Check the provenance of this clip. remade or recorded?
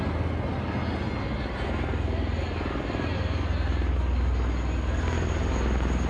recorded